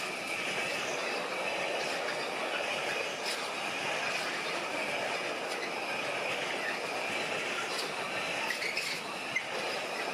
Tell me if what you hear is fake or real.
real